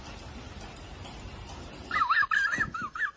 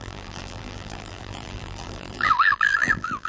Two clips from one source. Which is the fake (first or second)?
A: second